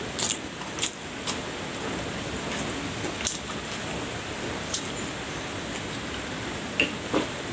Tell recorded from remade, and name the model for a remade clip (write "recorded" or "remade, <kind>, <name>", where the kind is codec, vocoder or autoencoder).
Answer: recorded